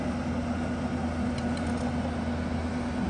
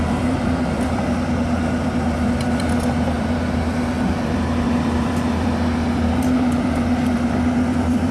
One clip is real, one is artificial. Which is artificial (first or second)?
second